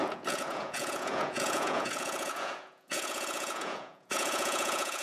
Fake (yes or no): yes